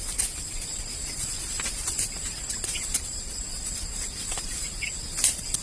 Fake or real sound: real